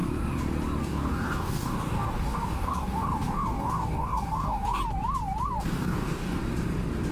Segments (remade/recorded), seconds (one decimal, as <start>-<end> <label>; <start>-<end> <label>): 0.0-0.8 recorded; 0.8-4.8 remade; 4.8-5.6 recorded; 5.6-6.4 remade; 6.4-7.1 recorded